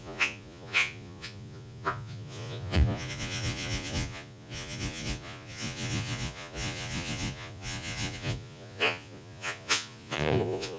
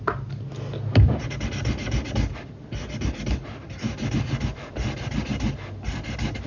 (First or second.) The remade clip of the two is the first